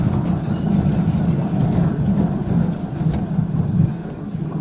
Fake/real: real